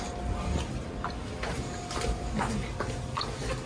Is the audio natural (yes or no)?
yes